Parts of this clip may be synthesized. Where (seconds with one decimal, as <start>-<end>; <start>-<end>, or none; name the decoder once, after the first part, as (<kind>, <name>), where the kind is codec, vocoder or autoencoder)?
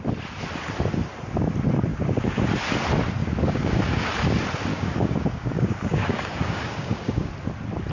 1.9-2.4 (codec, DAC); 3.2-4.1; 4.7-7.3